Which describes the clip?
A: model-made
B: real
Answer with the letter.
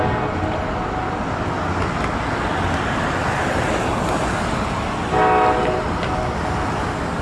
B